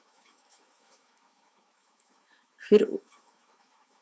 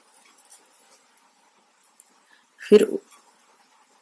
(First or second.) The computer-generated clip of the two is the first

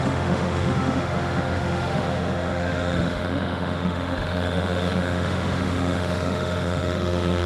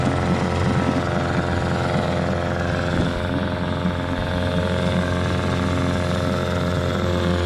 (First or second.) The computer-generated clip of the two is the first